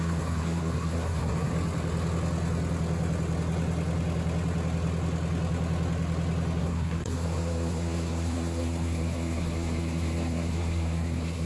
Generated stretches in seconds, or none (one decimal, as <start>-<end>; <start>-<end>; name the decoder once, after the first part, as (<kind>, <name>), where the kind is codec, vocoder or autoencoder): 0.0-1.5 (codec, SNAC); 6.6-11.5